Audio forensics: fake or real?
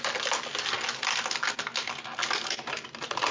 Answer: real